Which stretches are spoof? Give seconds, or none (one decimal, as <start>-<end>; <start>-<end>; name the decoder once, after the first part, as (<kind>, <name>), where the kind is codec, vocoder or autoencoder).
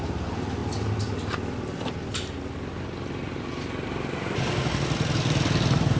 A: none